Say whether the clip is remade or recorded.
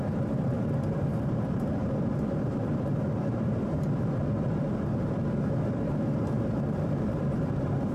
remade